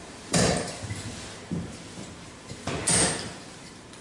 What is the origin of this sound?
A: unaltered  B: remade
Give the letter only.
B